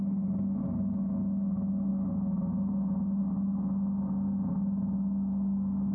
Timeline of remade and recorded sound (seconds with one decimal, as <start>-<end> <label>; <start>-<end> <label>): 0.0-5.9 recorded